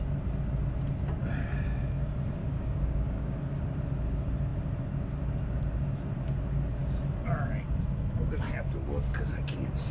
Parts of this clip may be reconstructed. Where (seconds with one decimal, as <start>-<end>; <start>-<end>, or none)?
2.4-3.4